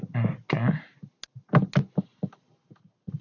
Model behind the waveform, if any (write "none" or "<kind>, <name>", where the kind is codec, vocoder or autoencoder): none